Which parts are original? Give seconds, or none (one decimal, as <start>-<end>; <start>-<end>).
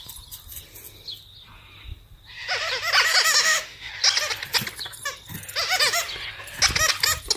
0.0-3.1; 3.9-7.4